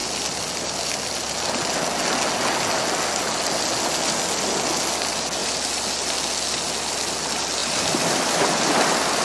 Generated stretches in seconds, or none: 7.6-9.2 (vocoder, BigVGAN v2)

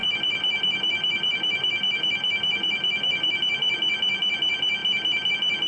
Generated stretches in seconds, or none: 0.0-3.4 (vocoder, BigVGAN v2)